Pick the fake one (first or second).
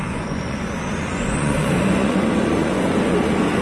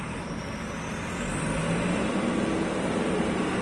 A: first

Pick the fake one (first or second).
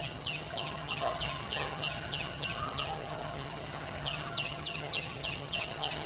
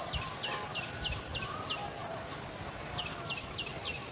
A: first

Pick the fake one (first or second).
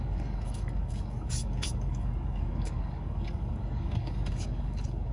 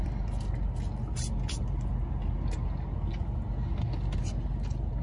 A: first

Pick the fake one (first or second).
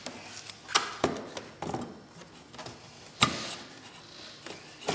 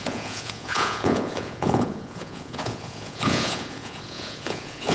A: second